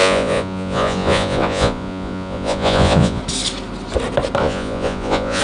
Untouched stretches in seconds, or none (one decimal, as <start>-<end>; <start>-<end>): 3.2-4.4